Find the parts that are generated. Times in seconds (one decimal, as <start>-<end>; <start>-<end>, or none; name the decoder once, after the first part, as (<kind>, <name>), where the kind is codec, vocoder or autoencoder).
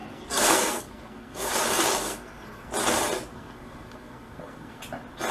0.0-1.5 (codec, SNAC); 2.0-2.7; 3.3-4.8